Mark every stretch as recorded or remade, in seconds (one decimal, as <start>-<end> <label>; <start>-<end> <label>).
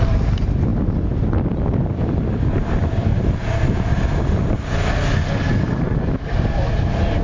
0.0-7.2 recorded